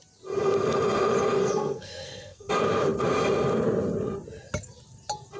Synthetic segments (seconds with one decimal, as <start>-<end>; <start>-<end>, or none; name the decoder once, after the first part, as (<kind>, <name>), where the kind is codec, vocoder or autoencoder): 1.4-2.5 (codec, SNAC)